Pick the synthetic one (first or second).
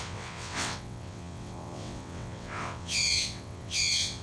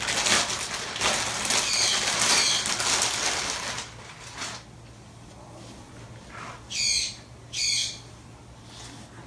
first